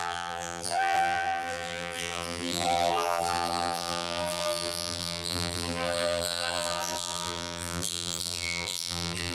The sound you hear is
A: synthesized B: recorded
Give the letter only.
A